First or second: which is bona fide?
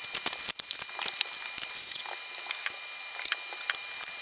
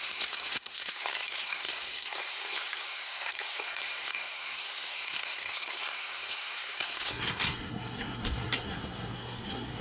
first